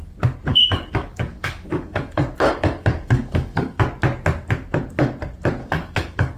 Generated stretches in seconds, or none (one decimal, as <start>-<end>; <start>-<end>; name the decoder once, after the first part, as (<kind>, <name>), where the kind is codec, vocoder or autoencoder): 0.5-3.8 (codec, DAC); 5.6-6.4